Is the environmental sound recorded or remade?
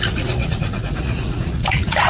remade